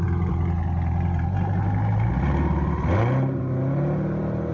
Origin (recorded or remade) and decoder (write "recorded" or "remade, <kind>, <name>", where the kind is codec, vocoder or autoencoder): recorded